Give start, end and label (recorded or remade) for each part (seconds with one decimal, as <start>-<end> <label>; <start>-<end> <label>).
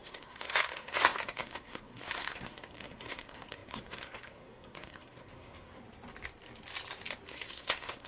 0.0-5.8 remade; 5.8-7.3 recorded; 7.3-8.1 remade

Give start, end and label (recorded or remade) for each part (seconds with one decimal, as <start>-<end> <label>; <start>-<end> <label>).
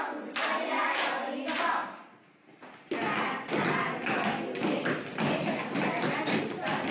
0.0-6.9 recorded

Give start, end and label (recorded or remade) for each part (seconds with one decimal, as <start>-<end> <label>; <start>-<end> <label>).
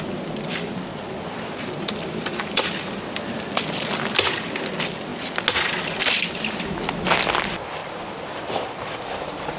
0.0-9.6 recorded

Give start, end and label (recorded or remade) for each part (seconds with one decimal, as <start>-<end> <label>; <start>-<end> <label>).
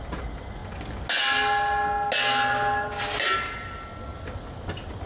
0.0-5.1 recorded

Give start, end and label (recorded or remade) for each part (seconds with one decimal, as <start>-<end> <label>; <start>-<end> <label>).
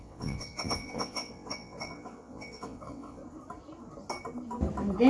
0.0-3.2 remade; 3.2-5.1 recorded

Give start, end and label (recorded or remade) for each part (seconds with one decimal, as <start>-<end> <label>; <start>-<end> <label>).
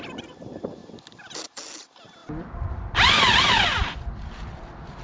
0.0-5.0 recorded